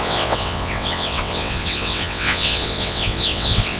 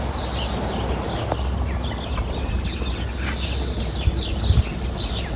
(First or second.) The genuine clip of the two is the second